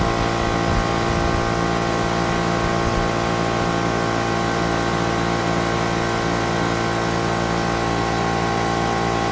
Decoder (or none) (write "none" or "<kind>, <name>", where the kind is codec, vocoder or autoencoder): none